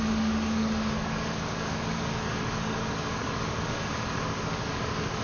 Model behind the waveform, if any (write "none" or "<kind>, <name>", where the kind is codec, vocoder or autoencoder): codec, DAC